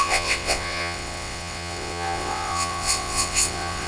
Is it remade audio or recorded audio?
remade